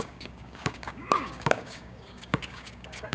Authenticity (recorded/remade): remade